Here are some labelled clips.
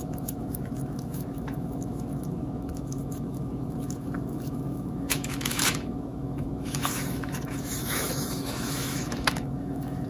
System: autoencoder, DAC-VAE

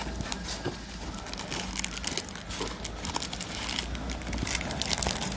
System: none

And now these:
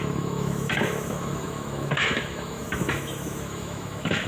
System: autoencoder, DAC-VAE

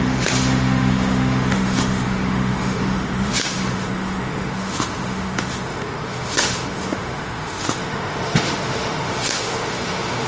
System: autoencoder, DAC-VAE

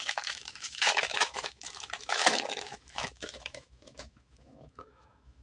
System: autoencoder, DAC-VAE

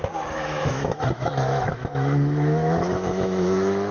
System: autoencoder, DAC-VAE